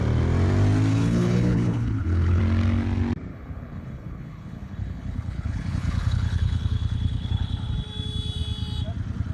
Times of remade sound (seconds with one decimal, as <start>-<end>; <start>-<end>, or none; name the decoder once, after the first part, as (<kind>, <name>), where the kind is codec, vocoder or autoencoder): 0.9-2.4 (codec, HILCodec); 3.3-7.7